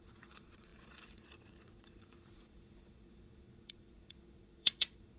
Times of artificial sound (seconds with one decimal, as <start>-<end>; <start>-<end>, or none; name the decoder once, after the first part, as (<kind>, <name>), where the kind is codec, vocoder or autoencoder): 0.0-5.2 (vocoder, Vocos)